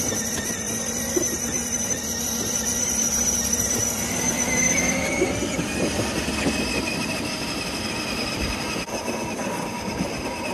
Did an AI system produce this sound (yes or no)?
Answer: yes